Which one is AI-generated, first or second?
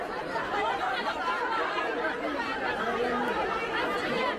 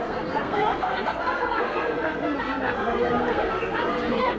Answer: second